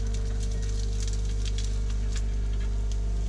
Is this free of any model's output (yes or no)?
yes